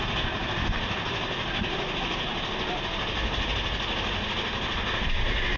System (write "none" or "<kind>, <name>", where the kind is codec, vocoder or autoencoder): none